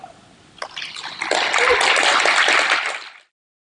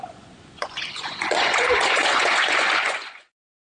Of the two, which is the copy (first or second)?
second